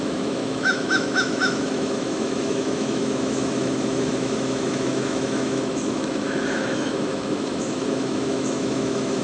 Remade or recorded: remade